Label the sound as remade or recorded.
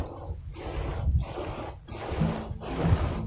recorded